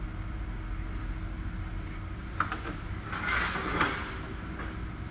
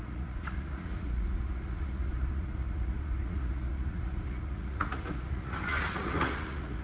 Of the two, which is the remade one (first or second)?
second